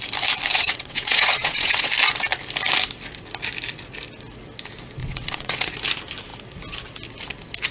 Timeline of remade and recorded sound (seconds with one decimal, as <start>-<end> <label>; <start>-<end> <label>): 0.0-0.5 recorded; 0.5-1.9 remade; 1.9-5.0 recorded; 5.0-5.7 remade; 5.7-7.7 recorded